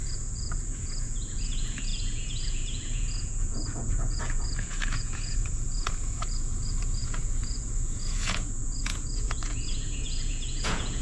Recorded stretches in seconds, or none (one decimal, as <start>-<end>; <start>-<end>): none